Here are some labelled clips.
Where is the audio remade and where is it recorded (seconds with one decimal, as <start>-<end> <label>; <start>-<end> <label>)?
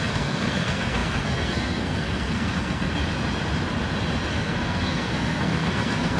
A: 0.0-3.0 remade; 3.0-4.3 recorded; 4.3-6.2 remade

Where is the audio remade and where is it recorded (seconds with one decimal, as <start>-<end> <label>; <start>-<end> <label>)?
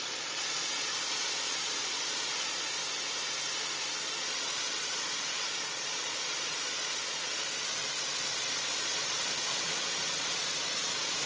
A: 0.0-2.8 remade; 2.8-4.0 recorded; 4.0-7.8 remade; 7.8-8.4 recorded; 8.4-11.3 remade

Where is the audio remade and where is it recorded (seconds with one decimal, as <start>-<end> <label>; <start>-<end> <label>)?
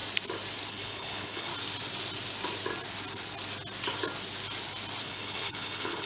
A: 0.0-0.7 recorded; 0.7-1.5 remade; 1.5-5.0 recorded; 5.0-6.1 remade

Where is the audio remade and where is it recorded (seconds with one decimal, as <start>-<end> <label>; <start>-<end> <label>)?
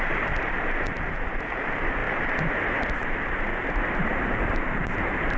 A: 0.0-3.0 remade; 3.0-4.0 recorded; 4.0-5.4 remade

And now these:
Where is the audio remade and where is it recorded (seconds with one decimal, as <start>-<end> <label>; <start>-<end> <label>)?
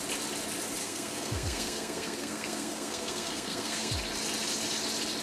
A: 0.0-0.8 recorded; 0.8-3.9 remade; 3.9-5.2 recorded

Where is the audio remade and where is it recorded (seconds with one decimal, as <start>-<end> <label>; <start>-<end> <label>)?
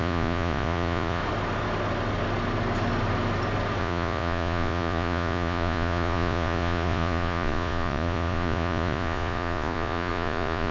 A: 0.0-1.2 remade; 1.2-3.8 recorded; 3.8-10.7 remade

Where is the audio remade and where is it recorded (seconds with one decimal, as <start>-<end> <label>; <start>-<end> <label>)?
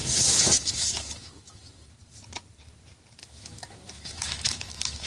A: 0.0-1.9 remade; 1.9-3.2 recorded; 3.2-5.1 remade